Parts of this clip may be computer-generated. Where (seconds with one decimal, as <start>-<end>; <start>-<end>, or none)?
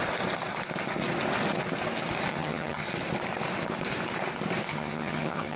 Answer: 2.3-2.9; 4.7-5.6